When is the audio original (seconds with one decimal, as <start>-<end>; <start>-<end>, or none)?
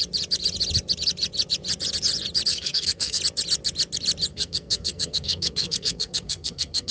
0.0-2.5; 3.2-4.3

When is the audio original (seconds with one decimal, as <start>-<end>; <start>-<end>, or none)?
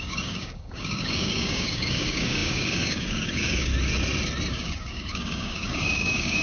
3.7-4.5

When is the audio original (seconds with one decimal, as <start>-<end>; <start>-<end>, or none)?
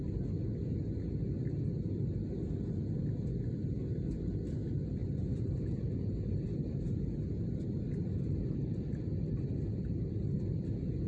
0.0-5.0; 8.9-11.1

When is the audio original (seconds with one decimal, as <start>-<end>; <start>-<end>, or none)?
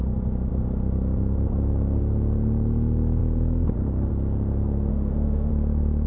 0.0-4.9; 5.5-6.1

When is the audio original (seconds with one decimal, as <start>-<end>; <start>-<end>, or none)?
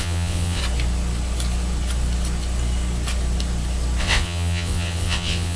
0.6-4.0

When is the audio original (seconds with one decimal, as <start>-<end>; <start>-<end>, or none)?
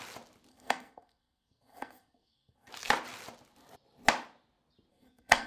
0.0-0.5; 2.7-4.9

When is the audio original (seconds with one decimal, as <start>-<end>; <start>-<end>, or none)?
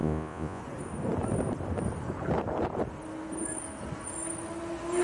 0.6-5.0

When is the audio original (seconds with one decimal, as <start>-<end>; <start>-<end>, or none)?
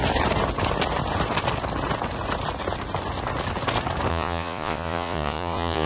0.0-4.1